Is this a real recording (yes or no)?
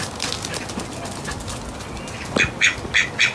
yes